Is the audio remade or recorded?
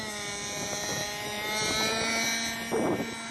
recorded